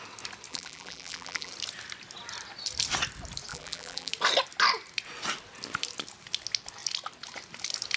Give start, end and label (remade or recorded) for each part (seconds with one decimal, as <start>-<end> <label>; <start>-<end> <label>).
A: 0.0-0.5 recorded; 0.5-1.5 remade; 1.5-3.5 recorded; 3.5-4.1 remade; 4.1-8.0 recorded